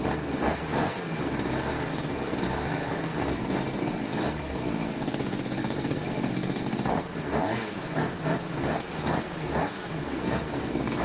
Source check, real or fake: fake